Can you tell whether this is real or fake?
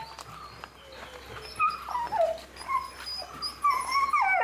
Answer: real